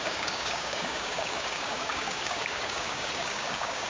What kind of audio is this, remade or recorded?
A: remade